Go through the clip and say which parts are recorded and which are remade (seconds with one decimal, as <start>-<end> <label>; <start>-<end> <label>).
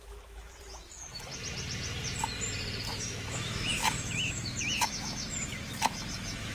0.0-1.3 remade; 1.3-2.9 recorded; 2.9-6.5 remade